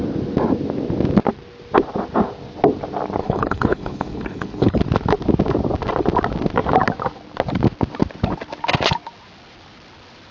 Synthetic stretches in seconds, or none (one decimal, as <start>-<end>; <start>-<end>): 3.2-4.8